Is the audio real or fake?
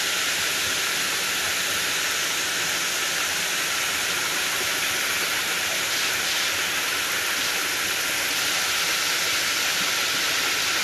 real